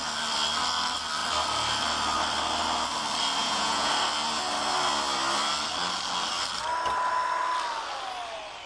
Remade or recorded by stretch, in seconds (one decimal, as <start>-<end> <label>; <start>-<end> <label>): 0.0-3.4 recorded; 3.4-3.9 remade; 3.9-8.7 recorded